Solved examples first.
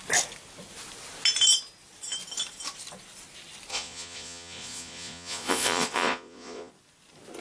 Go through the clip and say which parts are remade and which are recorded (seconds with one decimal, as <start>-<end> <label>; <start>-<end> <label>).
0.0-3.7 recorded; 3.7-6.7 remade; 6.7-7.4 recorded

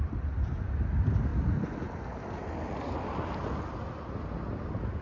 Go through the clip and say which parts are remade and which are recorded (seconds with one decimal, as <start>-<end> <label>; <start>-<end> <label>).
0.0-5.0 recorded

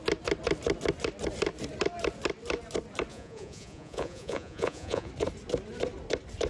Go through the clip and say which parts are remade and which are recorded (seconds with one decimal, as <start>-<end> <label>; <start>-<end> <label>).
0.0-3.1 recorded; 3.1-5.1 remade; 5.1-6.5 recorded

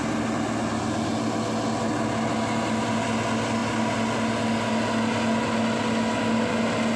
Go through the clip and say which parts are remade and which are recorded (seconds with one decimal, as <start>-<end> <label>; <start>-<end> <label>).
0.0-7.0 recorded

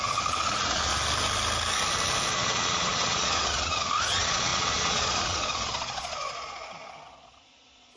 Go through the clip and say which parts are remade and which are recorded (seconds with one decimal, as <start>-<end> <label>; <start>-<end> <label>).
0.0-0.9 remade; 0.9-2.3 recorded; 2.3-8.0 remade

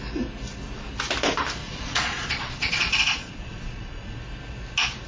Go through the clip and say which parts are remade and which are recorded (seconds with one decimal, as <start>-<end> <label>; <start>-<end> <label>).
0.0-1.6 recorded; 1.6-4.2 remade; 4.2-5.1 recorded

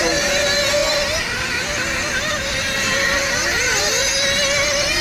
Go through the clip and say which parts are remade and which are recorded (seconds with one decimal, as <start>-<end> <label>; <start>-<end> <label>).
0.0-5.0 recorded